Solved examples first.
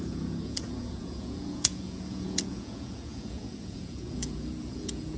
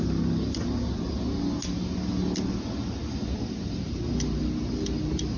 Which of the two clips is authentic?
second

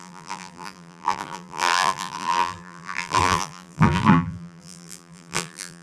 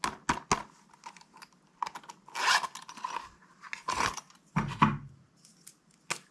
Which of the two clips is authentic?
second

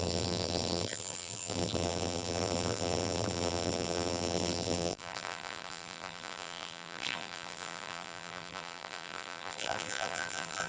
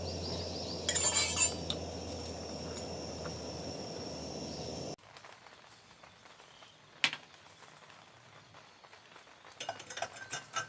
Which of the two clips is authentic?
second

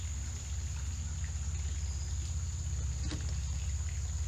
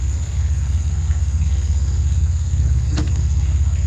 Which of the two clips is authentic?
first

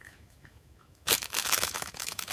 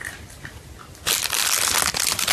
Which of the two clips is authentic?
second